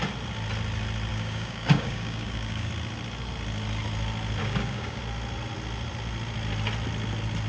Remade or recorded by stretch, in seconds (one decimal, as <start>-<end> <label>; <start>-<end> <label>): 0.0-1.1 recorded; 1.1-2.7 remade; 2.7-4.4 recorded; 4.4-5.0 remade; 5.0-7.5 recorded